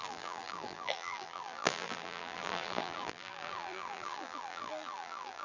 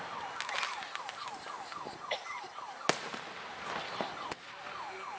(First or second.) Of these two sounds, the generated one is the first